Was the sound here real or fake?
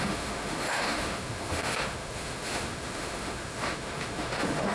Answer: fake